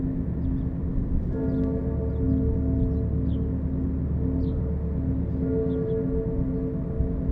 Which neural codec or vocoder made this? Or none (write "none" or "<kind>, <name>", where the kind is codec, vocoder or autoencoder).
none